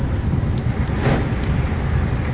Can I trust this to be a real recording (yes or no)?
yes